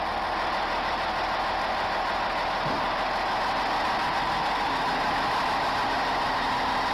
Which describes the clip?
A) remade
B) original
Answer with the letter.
B